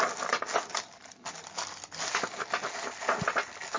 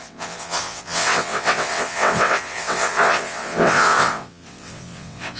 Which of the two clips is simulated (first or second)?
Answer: second